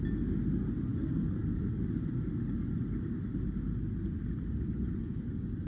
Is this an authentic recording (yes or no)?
yes